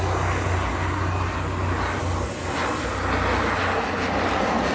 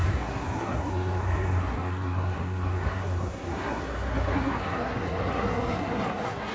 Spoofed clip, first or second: second